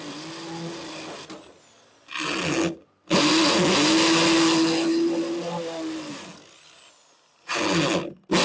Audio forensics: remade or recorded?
recorded